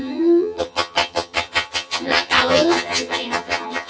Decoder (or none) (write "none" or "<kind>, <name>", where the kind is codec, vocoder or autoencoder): vocoder, HiFi-GAN